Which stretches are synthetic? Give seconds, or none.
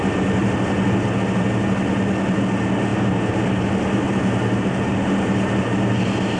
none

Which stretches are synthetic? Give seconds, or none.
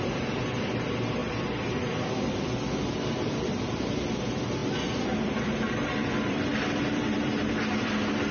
1.2-3.3 (vocoder, BigVGAN v2); 4.6-7.5